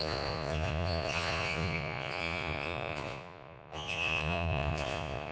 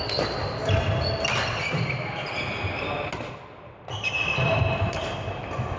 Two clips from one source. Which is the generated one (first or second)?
first